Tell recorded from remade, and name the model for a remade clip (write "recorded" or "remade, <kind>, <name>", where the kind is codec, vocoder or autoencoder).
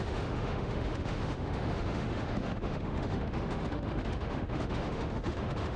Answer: remade, autoencoder, DAC-VAE